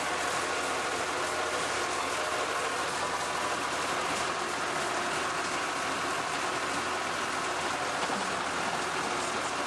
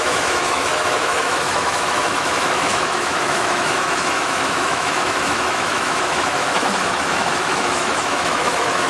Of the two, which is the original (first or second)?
first